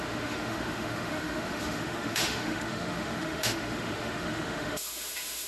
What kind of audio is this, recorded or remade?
remade